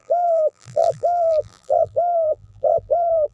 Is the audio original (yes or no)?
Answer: no